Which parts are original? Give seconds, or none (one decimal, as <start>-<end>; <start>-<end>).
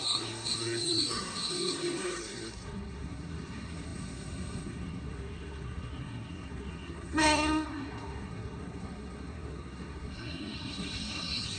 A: none